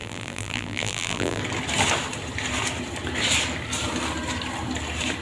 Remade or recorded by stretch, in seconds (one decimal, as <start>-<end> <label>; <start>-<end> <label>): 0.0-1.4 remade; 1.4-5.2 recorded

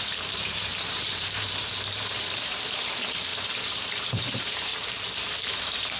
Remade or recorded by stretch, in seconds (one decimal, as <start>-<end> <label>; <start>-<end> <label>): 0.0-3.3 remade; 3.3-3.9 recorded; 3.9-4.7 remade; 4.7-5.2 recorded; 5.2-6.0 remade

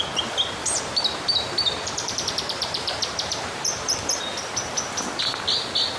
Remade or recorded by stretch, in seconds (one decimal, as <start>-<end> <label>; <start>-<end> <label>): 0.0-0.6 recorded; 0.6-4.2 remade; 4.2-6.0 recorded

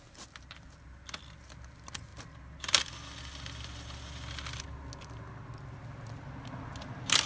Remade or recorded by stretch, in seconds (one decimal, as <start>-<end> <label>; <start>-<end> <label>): 0.0-2.1 recorded; 2.1-2.9 remade; 2.9-7.3 recorded

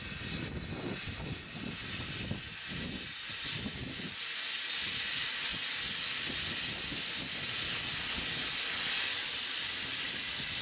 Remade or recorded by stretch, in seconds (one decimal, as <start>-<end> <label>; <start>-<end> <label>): 0.0-10.6 recorded

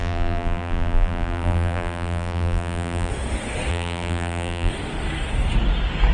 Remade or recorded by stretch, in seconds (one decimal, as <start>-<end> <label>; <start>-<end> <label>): 0.0-3.1 remade; 3.1-3.7 recorded; 3.7-4.7 remade; 4.7-6.1 recorded

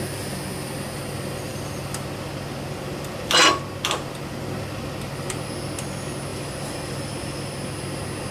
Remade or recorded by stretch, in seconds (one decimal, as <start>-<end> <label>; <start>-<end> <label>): 0.0-6.3 recorded; 6.3-7.5 remade; 7.5-8.3 recorded

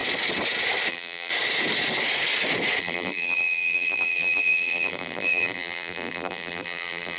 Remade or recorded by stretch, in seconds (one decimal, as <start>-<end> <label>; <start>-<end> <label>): 0.0-0.9 recorded; 0.9-1.3 remade; 1.3-2.8 recorded; 2.8-7.2 remade